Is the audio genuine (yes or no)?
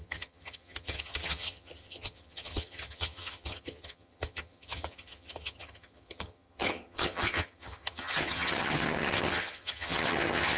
no